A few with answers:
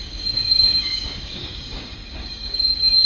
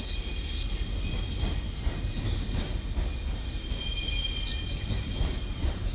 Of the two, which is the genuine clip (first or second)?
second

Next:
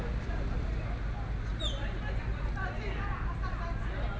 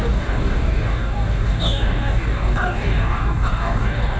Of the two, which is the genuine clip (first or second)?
first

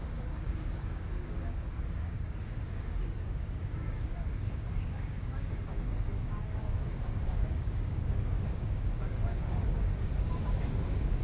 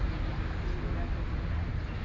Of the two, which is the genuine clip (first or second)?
second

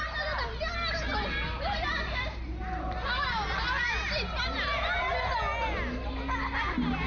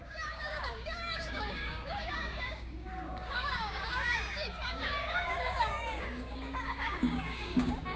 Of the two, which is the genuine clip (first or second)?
first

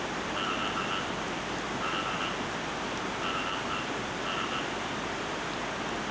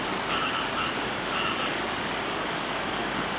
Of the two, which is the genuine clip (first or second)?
first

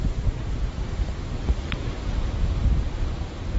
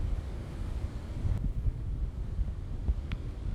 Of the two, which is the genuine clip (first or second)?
first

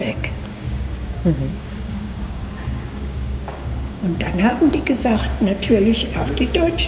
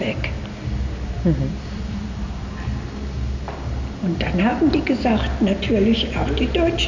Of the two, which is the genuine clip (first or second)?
second